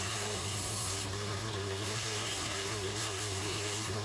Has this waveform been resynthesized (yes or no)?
yes